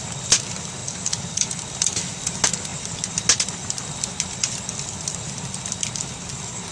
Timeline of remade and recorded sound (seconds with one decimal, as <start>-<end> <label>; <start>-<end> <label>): 0.0-0.8 recorded; 0.8-2.0 remade; 2.0-6.7 recorded